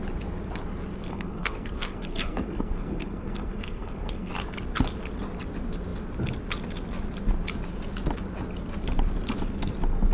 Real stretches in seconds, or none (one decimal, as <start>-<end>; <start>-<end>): 0.0-1.1; 4.3-10.1